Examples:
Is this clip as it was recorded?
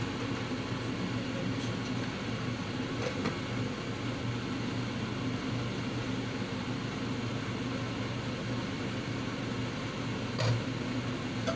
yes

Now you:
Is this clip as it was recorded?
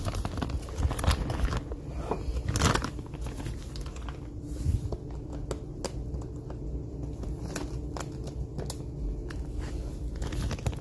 yes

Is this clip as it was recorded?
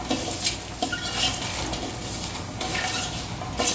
yes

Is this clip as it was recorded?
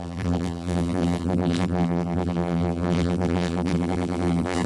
no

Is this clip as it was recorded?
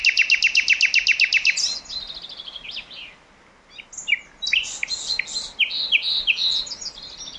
yes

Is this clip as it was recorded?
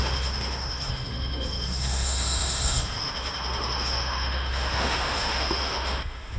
no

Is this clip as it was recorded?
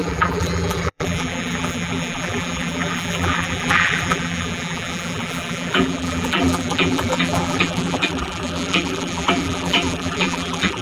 no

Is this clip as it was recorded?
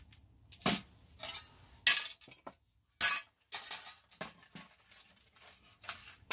yes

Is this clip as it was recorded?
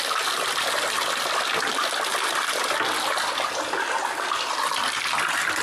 yes